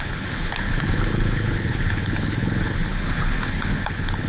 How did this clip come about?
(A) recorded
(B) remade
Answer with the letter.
B